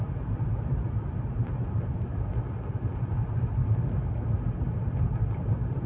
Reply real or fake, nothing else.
real